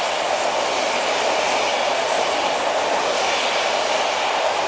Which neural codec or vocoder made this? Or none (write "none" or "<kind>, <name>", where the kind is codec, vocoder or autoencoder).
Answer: none